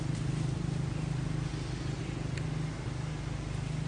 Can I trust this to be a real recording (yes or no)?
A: yes